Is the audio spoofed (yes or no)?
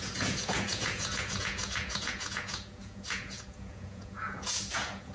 yes